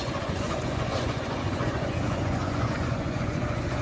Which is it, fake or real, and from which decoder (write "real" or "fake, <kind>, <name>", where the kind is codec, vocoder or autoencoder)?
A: fake, vocoder, Vocos